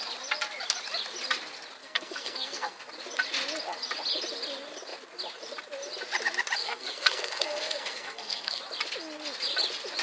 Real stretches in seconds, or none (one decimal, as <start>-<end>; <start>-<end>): 0.0-1.8; 2.8-6.6; 8.6-10.0